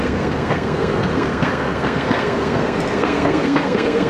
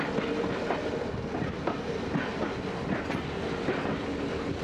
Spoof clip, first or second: first